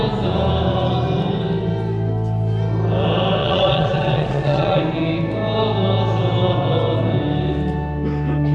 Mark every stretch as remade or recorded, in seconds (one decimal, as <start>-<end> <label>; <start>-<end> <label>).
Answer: 0.0-3.4 recorded; 3.4-4.8 remade; 4.8-8.5 recorded